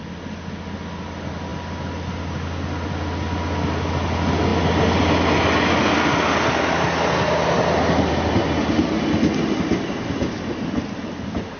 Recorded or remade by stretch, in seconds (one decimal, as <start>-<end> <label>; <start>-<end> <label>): 0.0-11.6 recorded